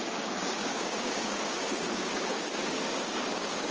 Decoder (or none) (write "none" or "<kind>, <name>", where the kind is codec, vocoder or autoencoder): codec, DAC